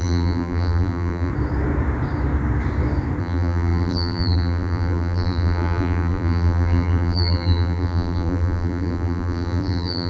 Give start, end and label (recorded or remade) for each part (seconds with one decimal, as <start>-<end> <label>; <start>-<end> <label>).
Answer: 0.0-1.3 remade; 1.3-3.2 recorded; 3.2-10.1 remade